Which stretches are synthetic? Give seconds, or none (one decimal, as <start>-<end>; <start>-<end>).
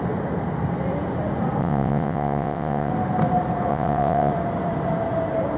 1.6-2.9; 3.7-4.3